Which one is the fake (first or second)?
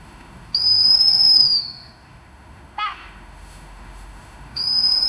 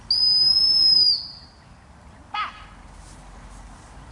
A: first